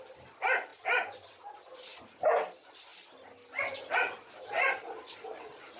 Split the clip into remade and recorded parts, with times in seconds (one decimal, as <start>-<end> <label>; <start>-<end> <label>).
0.0-5.8 recorded